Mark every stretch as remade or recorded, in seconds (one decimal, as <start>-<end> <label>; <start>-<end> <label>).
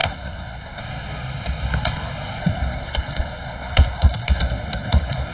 0.0-0.8 remade; 0.8-2.4 recorded; 2.4-5.3 remade